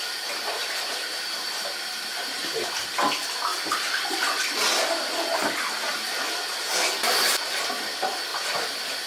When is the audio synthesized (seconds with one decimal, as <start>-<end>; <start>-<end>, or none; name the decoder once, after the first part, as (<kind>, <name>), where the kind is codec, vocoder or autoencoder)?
0.6-2.9 (vocoder, BigVGAN v2); 8.3-9.1